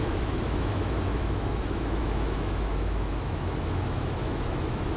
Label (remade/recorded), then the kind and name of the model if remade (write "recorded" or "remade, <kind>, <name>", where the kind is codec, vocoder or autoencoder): remade, autoencoder, DAC-VAE